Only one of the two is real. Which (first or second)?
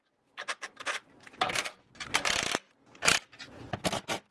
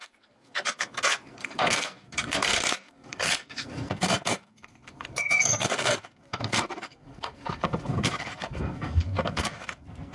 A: first